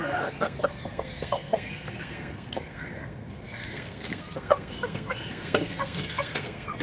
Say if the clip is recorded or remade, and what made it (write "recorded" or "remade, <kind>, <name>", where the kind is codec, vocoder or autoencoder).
remade, codec, SNAC